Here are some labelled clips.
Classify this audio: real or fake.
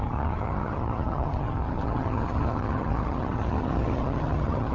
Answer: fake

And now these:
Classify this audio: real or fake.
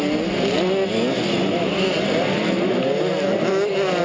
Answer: real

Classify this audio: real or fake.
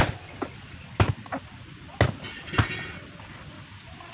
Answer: real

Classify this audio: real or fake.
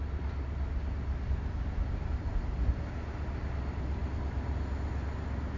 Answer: real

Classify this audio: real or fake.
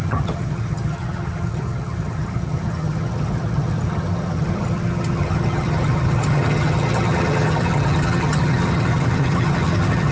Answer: fake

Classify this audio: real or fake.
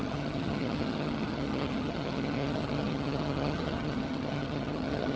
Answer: fake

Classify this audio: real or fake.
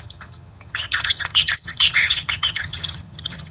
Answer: fake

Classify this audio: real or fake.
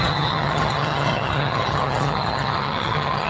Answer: fake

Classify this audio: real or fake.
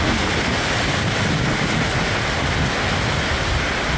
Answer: real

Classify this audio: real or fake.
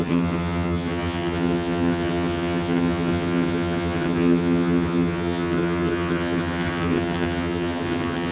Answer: fake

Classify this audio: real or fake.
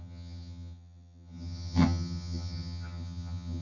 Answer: fake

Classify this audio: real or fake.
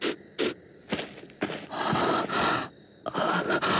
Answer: real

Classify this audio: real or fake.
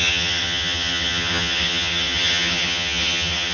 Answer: fake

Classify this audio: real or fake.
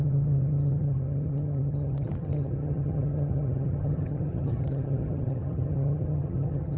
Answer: fake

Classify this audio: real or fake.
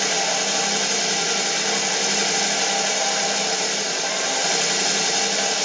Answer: real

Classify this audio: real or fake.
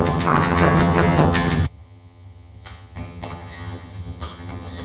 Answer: fake